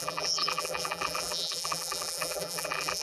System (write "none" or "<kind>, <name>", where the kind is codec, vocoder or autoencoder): vocoder, BigVGAN v2